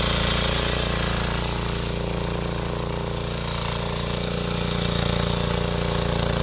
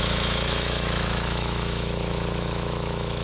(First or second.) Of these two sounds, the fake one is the second